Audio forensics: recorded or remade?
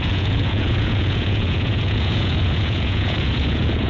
remade